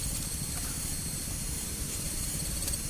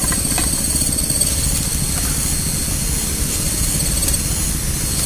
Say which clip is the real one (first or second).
second